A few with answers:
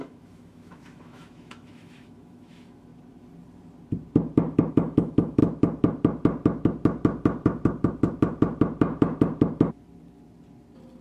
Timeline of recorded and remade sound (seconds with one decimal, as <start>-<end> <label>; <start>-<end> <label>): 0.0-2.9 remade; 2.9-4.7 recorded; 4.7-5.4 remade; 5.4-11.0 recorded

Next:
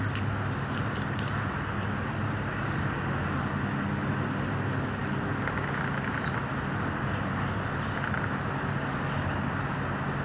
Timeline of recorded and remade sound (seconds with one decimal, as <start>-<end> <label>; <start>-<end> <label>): 0.0-10.2 recorded

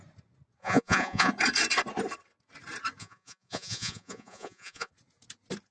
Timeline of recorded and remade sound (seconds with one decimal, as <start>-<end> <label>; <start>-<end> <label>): 0.0-0.6 recorded; 0.6-1.3 remade; 1.3-3.0 recorded; 3.0-4.9 remade; 4.9-5.7 recorded